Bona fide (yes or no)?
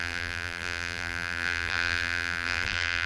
no